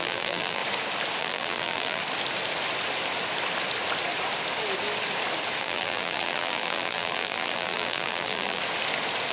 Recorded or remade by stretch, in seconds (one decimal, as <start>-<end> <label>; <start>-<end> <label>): 0.0-0.6 remade; 0.6-1.2 recorded; 1.2-2.0 remade; 2.0-5.6 recorded; 5.6-8.6 remade; 8.6-9.3 recorded